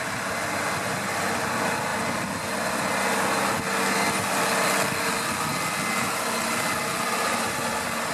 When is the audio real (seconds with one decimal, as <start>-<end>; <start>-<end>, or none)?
0.0-8.1